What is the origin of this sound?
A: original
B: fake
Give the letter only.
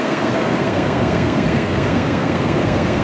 B